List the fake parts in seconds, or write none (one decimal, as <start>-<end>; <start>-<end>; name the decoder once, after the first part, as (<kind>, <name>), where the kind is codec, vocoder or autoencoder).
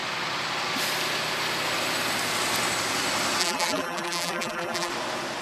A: 3.4-4.9 (vocoder, BigVGAN v2)